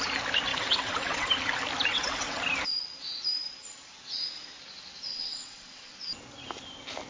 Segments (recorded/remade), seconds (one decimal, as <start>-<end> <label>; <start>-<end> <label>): 0.0-0.5 recorded; 0.5-1.3 remade; 1.3-1.9 recorded; 1.9-2.4 remade; 2.4-5.1 recorded; 5.1-5.9 remade; 5.9-7.1 recorded